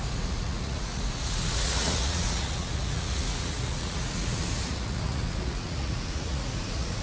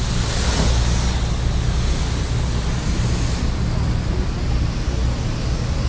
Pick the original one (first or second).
second